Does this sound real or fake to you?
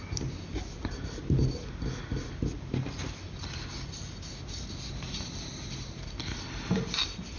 real